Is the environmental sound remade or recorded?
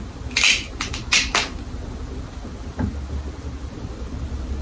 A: recorded